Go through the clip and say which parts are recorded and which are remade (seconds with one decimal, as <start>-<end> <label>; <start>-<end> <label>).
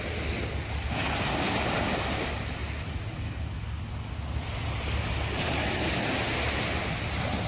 0.0-7.5 recorded